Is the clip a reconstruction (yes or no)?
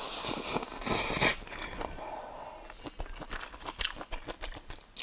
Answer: no